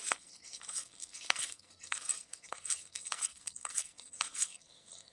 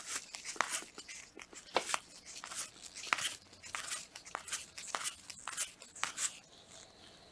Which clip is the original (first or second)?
second